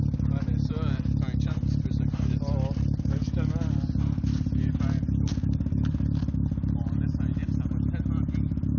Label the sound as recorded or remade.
recorded